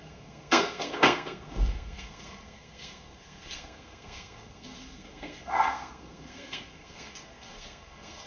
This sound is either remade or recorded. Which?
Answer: remade